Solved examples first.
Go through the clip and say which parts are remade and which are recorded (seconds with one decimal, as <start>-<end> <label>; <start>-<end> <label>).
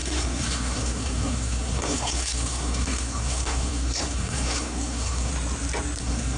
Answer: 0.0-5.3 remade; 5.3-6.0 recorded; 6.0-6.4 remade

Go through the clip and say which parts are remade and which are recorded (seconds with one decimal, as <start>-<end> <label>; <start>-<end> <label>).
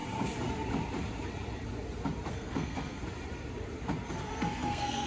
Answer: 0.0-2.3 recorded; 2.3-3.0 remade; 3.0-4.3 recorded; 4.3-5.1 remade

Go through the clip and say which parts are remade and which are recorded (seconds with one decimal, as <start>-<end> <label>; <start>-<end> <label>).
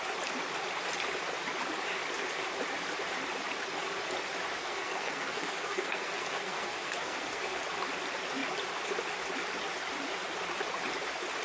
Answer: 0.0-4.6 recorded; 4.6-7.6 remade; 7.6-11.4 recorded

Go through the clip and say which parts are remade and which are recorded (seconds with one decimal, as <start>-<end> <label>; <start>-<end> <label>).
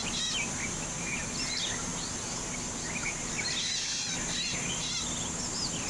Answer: 0.0-5.9 recorded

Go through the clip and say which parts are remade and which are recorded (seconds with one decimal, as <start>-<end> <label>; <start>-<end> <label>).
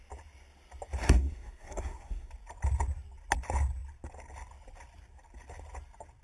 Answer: 0.0-1.0 recorded; 1.0-2.3 remade; 2.3-6.2 recorded